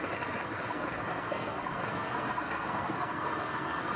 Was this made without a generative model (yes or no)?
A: no